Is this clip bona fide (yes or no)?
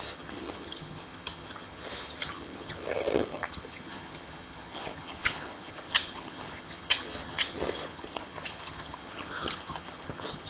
no